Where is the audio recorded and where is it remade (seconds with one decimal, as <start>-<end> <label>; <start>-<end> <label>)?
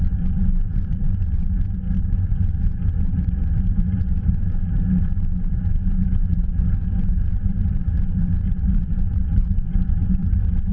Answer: 0.0-4.4 remade; 4.4-5.5 recorded; 5.5-10.7 remade